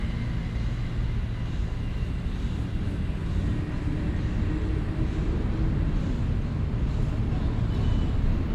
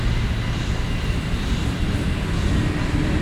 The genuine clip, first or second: first